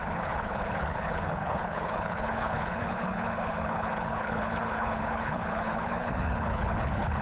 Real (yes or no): no